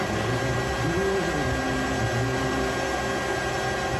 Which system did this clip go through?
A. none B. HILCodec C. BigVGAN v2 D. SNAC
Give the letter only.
A